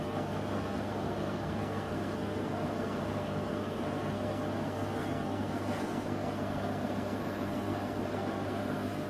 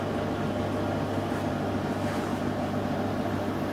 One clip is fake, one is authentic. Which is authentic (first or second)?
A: second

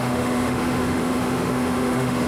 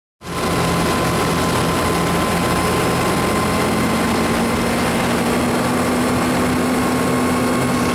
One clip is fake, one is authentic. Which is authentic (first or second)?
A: second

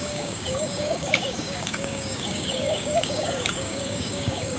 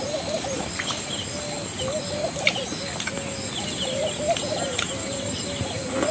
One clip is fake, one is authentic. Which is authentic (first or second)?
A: second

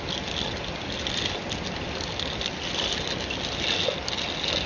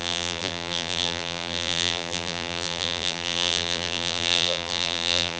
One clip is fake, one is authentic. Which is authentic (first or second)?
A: first